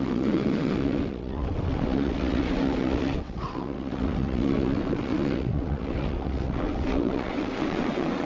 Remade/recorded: remade